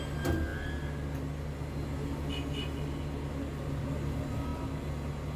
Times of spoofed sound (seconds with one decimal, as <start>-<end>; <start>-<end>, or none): none